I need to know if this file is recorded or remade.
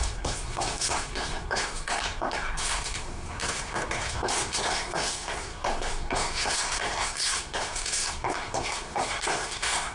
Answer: remade